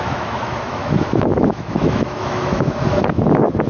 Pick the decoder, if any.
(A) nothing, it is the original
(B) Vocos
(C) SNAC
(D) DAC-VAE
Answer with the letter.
D